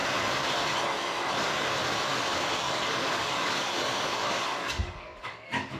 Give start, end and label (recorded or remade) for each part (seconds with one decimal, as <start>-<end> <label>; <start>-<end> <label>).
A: 0.0-2.1 recorded; 2.1-5.8 remade

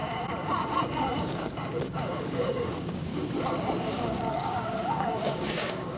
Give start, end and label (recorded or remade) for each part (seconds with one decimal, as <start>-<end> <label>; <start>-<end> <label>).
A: 0.0-1.2 recorded; 1.2-3.1 remade; 3.1-3.8 recorded; 3.8-6.0 remade

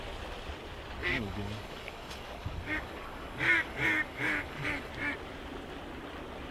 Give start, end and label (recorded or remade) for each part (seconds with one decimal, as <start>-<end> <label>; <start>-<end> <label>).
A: 0.0-1.0 recorded; 1.0-4.9 remade; 4.9-6.5 recorded